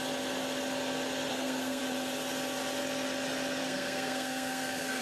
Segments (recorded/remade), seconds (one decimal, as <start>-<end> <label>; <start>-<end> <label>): 0.0-1.3 recorded; 1.3-1.8 remade; 1.8-3.6 recorded; 3.6-5.0 remade